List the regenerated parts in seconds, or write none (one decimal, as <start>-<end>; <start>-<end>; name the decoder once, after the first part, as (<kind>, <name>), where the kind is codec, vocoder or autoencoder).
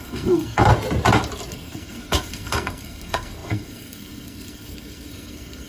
0.0-0.7 (codec, SNAC); 1.5-5.7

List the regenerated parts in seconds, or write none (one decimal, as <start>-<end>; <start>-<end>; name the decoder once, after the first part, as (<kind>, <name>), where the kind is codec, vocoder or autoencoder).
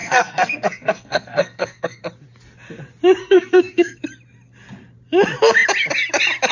0.0-2.0 (codec, SNAC); 3.2-4.0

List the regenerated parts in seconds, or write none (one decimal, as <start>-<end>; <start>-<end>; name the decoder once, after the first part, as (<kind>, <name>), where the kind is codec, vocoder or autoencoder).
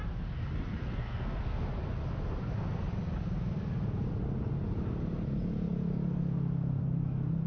0.8-1.7 (codec, SNAC)